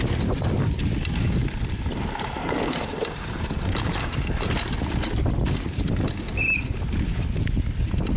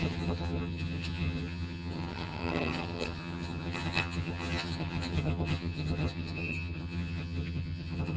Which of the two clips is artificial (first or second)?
second